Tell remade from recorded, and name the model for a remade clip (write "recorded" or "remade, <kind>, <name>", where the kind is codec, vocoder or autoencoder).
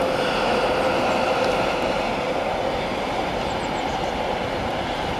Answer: recorded